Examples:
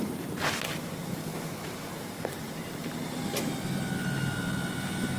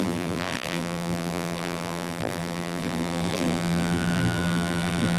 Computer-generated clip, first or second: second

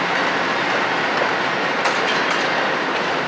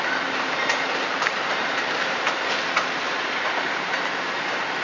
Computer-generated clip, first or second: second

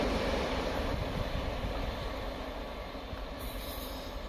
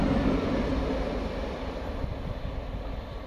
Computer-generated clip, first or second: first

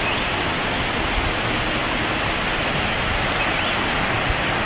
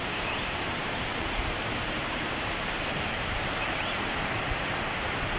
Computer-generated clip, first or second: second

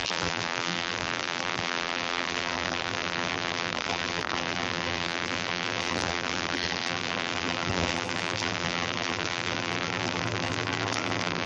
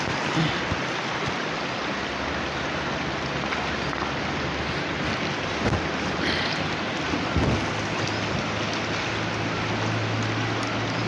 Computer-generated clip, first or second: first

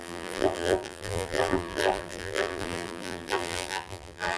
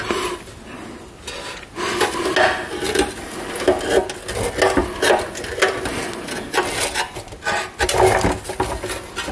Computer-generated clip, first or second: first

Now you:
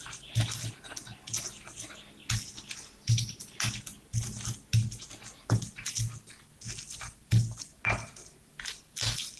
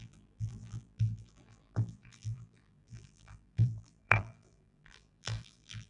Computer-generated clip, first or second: second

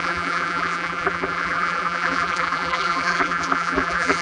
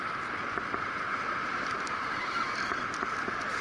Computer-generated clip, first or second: first